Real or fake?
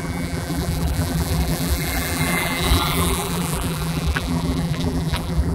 fake